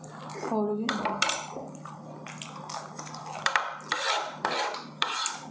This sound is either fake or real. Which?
real